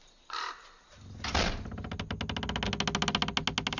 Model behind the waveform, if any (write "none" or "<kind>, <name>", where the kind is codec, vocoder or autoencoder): none